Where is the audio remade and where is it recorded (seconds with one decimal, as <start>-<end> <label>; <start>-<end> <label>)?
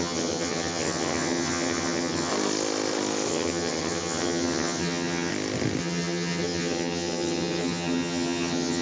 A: 0.0-2.3 remade; 2.3-3.3 recorded; 3.3-5.3 remade; 5.3-5.8 recorded; 5.8-8.8 remade